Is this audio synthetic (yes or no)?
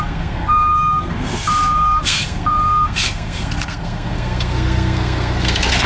yes